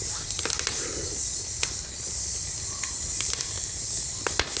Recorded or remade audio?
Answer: recorded